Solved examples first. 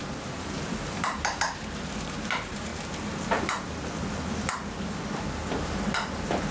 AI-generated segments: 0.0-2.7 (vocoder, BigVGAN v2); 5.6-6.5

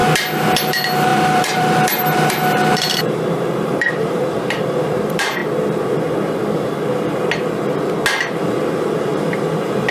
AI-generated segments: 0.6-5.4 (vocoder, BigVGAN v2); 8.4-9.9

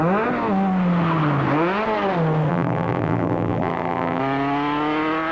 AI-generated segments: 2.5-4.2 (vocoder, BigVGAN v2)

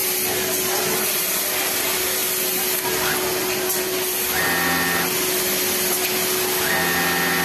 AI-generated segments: none

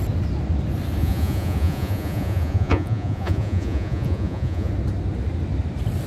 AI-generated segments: 1.0-4.7 (vocoder, Vocos)

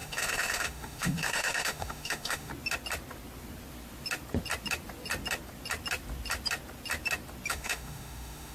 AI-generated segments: 0.0-2.5 (autoencoder, DAC-VAE); 7.5-8.5

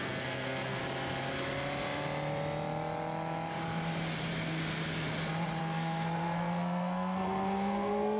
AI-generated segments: 0.0-0.8 (codec, SNAC); 5.6-8.2